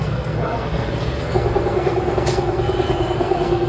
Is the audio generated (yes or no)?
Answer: yes